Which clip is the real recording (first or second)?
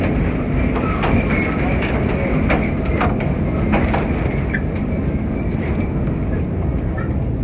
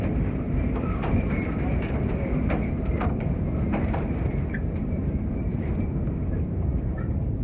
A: first